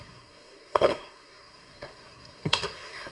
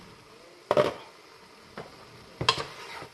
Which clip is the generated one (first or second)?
first